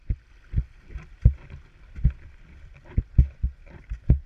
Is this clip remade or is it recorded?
recorded